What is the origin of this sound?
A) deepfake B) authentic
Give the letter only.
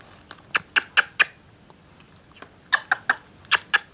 B